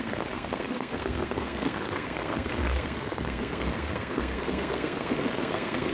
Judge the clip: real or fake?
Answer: fake